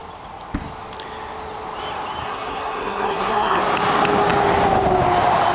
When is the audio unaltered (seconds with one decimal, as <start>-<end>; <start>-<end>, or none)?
0.0-2.2; 3.6-5.5